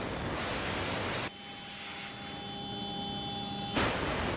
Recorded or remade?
recorded